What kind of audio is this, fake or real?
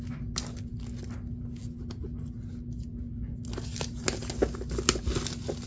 real